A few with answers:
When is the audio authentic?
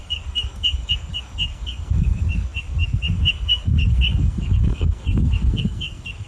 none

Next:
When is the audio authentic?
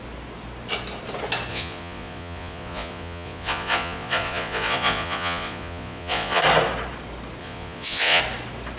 0.0-1.5; 6.4-7.4; 8.2-8.8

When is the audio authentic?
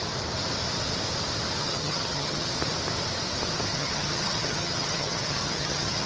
0.0-1.6; 2.5-3.7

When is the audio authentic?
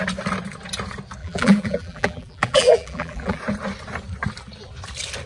0.0-1.2; 3.4-5.3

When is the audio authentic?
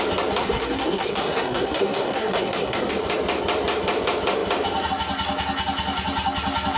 0.0-0.4; 2.9-6.8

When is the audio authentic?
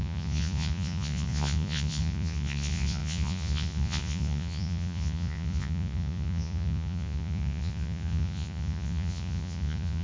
none